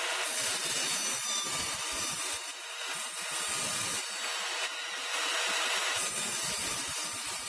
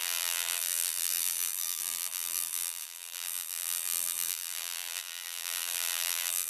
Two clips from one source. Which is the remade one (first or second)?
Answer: second